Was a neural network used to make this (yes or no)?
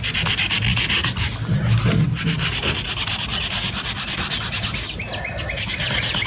no